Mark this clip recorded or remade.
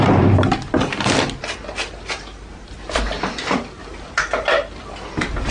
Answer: recorded